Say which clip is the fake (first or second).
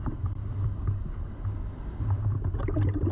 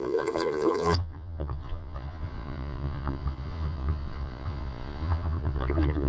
second